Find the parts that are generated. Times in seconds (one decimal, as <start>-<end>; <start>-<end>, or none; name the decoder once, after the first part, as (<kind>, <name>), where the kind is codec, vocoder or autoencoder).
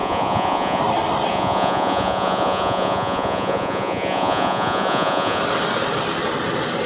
0.0-0.8 (vocoder, Vocos); 1.3-5.4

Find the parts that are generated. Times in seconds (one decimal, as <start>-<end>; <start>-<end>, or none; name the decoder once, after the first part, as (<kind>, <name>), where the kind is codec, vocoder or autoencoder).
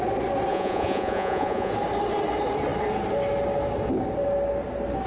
0.5-1.7 (vocoder, Vocos)